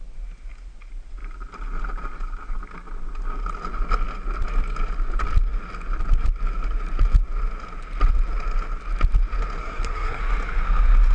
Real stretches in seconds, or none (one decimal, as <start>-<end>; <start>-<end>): 0.0-9.6; 10.2-11.1